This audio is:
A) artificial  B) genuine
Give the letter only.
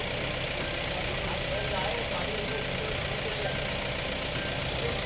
B